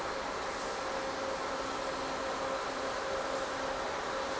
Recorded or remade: recorded